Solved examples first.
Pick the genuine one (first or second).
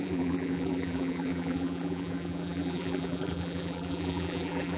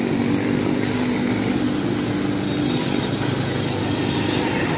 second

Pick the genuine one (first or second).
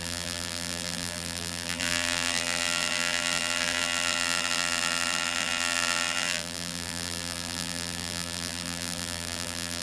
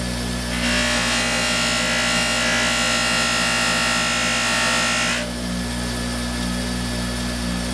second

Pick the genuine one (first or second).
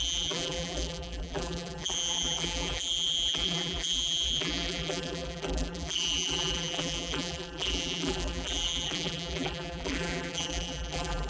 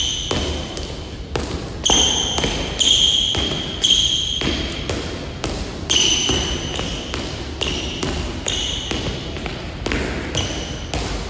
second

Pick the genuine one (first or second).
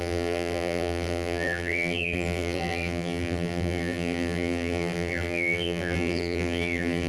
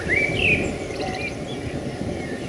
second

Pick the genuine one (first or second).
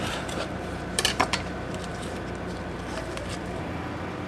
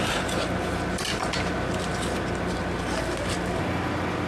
second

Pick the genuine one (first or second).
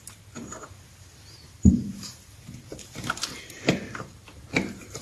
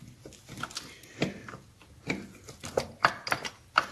second